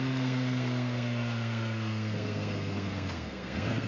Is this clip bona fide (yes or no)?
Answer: no